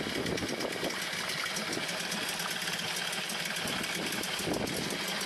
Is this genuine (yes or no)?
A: yes